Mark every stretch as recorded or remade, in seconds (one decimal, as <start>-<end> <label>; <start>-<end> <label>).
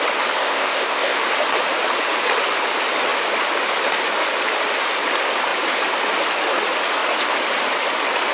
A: 0.0-0.4 recorded; 0.4-1.2 remade; 1.2-8.3 recorded